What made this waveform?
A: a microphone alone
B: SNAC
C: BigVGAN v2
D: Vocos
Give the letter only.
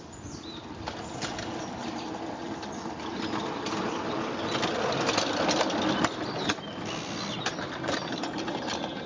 A